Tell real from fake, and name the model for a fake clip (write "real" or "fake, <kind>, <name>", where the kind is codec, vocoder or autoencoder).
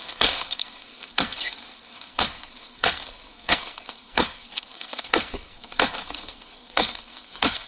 fake, codec, SNAC